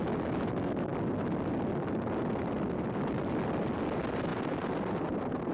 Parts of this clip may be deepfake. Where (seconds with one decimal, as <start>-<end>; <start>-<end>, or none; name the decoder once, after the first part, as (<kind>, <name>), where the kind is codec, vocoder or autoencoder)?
none